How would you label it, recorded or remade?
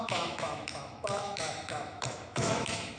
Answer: remade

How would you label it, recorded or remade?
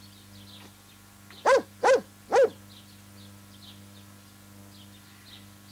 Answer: recorded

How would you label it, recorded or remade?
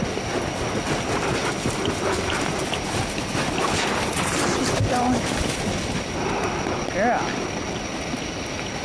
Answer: recorded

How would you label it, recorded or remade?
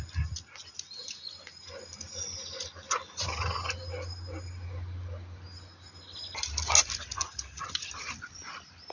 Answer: recorded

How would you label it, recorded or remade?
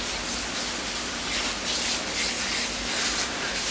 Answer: recorded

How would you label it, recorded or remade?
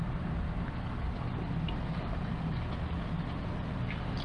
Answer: recorded